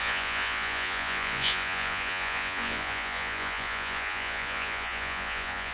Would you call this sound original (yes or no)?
no